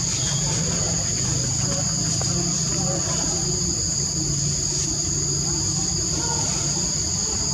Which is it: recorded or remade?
recorded